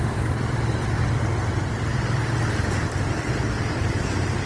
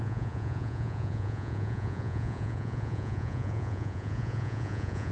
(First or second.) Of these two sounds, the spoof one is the second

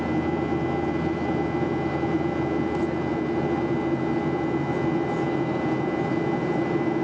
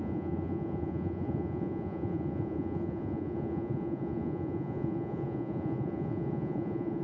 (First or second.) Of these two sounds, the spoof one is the second